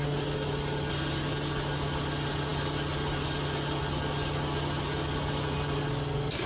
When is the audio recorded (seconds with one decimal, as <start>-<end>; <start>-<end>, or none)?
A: 0.0-6.5